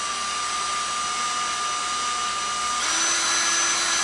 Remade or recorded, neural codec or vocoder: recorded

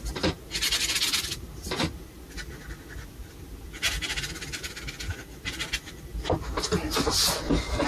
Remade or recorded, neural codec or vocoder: recorded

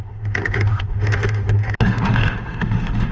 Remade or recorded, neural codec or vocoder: remade, autoencoder, DAC-VAE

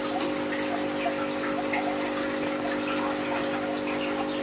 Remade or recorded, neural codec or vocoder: recorded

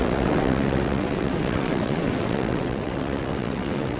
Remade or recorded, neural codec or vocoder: remade, vocoder, WaveNeXt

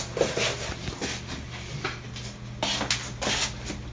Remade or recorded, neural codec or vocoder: recorded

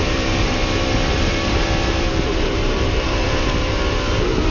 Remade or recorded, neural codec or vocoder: remade, vocoder, BigVGAN v2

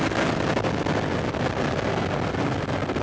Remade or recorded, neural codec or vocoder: recorded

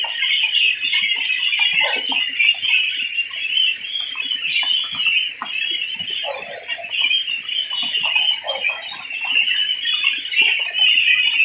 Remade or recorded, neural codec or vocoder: recorded